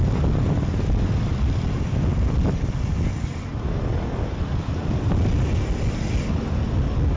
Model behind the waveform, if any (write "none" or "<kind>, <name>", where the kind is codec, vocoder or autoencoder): none